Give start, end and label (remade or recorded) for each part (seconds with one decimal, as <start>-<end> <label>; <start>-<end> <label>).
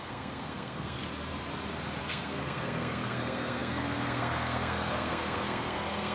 0.0-1.0 remade; 1.0-2.0 recorded; 2.0-6.1 remade